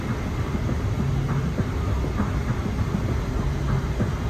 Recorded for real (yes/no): yes